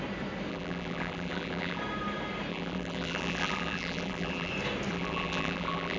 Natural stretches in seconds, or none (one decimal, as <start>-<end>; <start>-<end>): 0.0-0.5; 1.8-2.5; 4.5-4.9

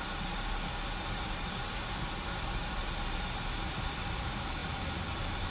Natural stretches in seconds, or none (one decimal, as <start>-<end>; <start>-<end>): 0.0-5.5